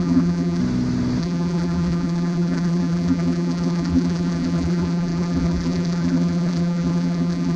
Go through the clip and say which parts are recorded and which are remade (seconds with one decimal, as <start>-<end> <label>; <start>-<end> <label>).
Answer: 0.0-0.6 remade; 0.6-1.2 recorded; 1.2-7.6 remade